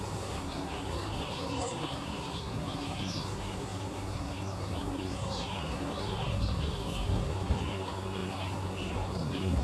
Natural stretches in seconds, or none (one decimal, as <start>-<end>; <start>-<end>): none